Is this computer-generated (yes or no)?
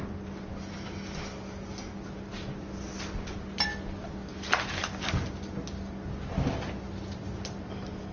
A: no